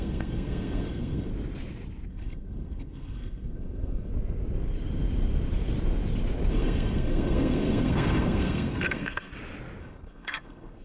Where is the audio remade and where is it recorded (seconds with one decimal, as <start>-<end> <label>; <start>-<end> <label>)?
0.0-1.3 remade; 1.3-2.1 recorded; 2.1-4.1 remade; 4.1-6.5 recorded; 6.5-9.3 remade; 9.3-9.8 recorded; 9.8-10.8 remade